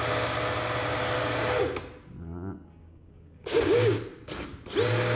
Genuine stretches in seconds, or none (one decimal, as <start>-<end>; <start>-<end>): 0.0-1.2; 1.8-2.8; 4.0-5.2